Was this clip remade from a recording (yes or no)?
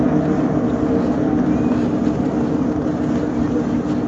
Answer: no